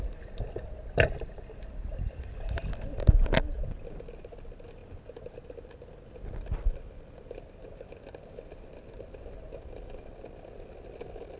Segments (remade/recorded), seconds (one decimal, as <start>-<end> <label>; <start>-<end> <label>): 0.0-11.4 recorded